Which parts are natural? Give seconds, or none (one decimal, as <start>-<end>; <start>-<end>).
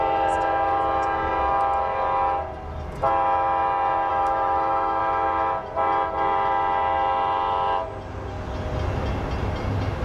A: 0.0-4.1; 5.0-10.0